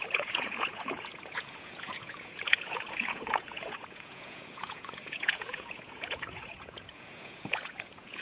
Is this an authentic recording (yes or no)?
no